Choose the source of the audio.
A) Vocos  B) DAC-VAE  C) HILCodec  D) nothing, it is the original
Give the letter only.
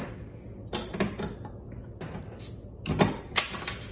D